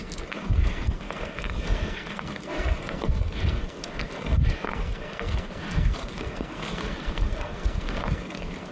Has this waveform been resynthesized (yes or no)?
yes